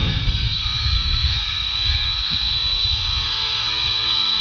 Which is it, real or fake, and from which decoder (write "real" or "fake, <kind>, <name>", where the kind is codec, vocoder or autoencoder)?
fake, codec, SNAC